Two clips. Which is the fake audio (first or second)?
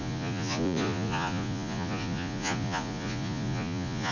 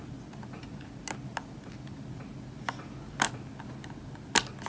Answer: first